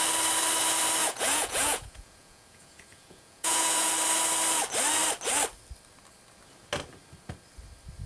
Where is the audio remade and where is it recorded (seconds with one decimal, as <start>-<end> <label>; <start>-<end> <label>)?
0.0-1.0 recorded; 1.0-3.9 remade; 3.9-8.1 recorded